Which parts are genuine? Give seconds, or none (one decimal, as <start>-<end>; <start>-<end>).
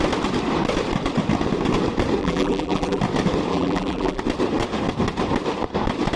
0.0-2.2; 3.0-3.5; 4.2-6.2